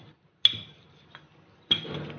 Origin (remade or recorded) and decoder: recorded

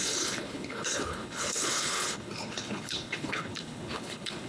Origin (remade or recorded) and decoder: remade, codec, HILCodec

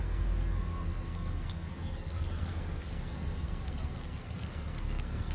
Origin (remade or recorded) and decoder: remade, codec, SNAC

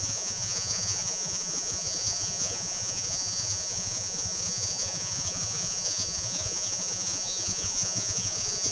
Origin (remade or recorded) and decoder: remade, vocoder, Vocos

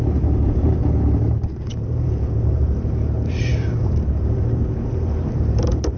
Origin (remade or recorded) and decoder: remade, vocoder, BigVGAN v2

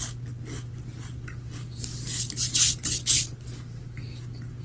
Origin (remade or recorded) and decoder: recorded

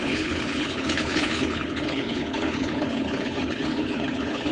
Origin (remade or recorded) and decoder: remade, codec, HILCodec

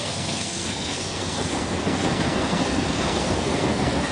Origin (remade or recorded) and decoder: remade, codec, SNAC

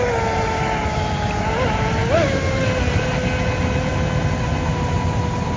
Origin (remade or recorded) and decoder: recorded